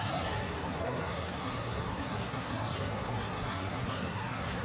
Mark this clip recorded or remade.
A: remade